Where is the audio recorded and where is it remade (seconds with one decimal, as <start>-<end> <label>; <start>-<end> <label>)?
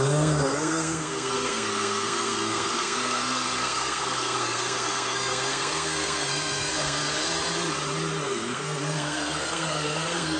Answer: 0.0-7.0 remade; 7.0-8.2 recorded; 8.2-10.4 remade